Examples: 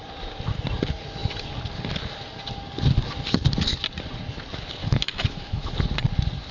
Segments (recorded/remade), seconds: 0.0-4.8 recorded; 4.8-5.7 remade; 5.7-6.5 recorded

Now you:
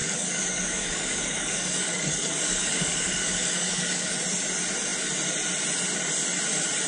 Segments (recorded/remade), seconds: 0.0-4.1 remade; 4.1-6.9 recorded